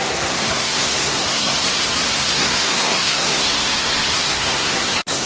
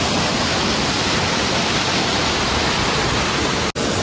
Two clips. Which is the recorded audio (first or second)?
second